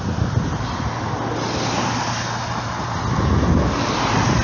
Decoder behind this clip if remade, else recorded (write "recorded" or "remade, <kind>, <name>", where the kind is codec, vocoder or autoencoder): recorded